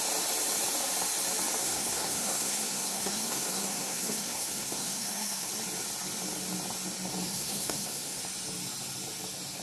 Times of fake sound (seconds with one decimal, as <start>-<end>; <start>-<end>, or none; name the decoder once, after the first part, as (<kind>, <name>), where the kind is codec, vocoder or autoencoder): 1.6-5.5 (codec, SNAC); 7.3-8.2